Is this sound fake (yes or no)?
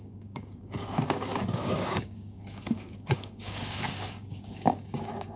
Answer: yes